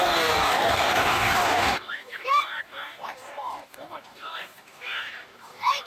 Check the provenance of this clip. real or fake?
fake